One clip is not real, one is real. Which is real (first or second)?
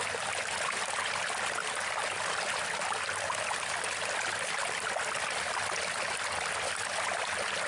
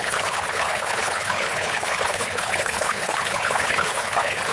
first